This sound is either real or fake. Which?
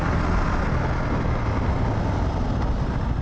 real